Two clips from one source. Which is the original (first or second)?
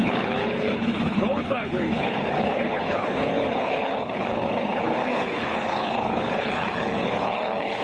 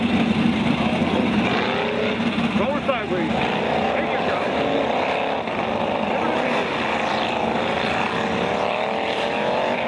second